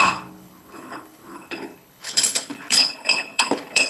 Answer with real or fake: fake